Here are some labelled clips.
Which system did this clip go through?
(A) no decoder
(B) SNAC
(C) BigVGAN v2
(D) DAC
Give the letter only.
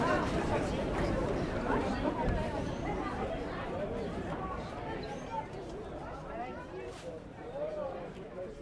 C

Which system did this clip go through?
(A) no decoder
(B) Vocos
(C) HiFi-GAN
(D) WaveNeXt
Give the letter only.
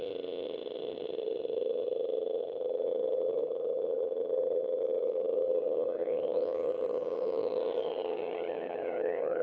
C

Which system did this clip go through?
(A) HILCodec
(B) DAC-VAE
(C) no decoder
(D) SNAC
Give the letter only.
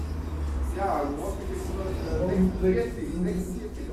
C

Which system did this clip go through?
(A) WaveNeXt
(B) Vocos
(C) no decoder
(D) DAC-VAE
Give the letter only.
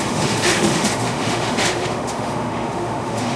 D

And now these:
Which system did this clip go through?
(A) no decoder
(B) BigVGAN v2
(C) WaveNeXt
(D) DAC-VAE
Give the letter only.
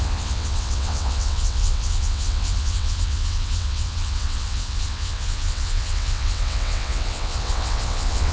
C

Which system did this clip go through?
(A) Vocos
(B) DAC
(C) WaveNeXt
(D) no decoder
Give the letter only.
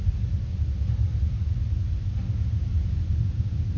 D